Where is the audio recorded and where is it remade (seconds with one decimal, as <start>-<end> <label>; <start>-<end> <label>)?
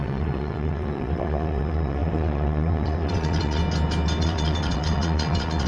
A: 0.0-3.6 remade; 3.6-4.2 recorded; 4.2-5.7 remade